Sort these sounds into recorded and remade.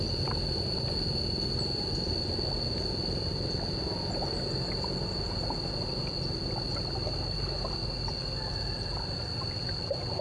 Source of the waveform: recorded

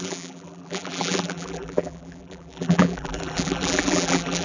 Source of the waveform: remade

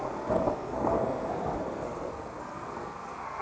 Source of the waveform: remade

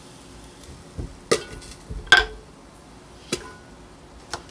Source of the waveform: recorded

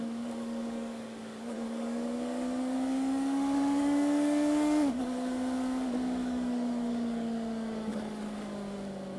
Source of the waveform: remade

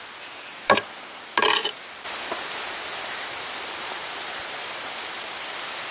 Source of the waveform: remade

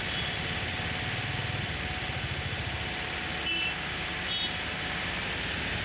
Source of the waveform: recorded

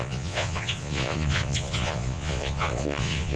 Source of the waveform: remade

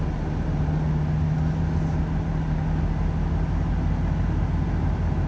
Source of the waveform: recorded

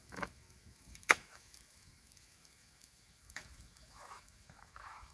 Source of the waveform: remade